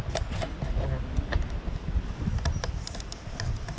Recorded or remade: recorded